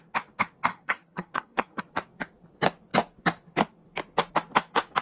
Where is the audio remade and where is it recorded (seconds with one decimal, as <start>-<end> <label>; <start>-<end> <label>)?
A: 0.0-0.7 recorded; 0.7-1.8 remade; 1.8-5.0 recorded